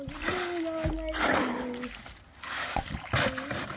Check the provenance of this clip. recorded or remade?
recorded